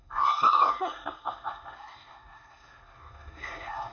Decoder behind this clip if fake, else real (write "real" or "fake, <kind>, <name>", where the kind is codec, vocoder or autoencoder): fake, codec, SNAC